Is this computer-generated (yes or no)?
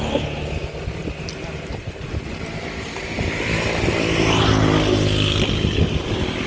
no